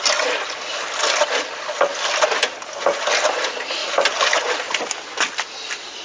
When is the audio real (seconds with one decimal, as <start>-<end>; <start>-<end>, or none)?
0.0-1.9; 2.8-3.8; 4.8-6.0